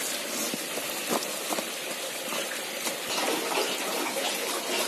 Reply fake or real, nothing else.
real